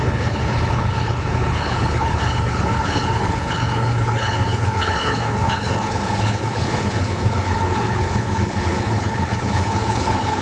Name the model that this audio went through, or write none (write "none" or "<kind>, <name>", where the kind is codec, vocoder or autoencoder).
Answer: codec, HILCodec